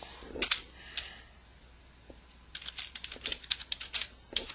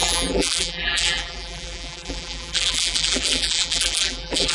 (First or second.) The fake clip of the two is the second